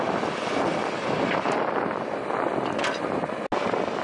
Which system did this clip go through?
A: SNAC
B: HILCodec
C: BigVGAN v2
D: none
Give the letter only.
D